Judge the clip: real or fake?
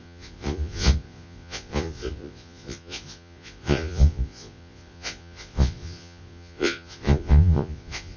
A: fake